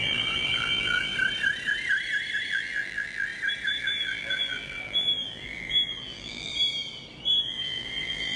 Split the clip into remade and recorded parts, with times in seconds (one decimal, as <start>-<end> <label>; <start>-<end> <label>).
0.0-1.1 remade; 1.1-2.5 recorded; 2.5-3.3 remade; 3.3-3.8 recorded; 3.8-6.5 remade; 6.5-7.3 recorded; 7.3-8.4 remade